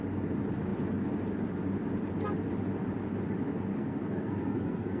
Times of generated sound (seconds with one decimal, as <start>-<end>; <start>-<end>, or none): 3.7-5.0

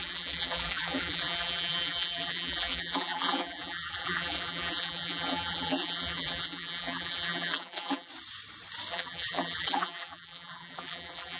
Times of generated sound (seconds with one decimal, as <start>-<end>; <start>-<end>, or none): 0.0-8.1; 8.9-11.4